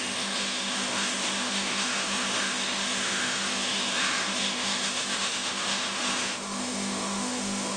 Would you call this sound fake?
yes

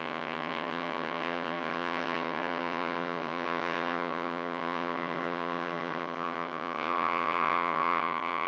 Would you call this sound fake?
yes